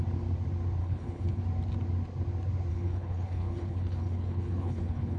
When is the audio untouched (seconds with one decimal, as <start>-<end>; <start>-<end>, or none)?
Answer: 0.0-0.8; 1.4-2.7